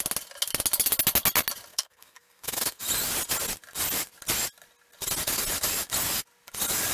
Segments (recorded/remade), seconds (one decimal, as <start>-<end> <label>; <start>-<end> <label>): 0.0-1.7 recorded; 1.7-2.8 remade; 2.8-6.9 recorded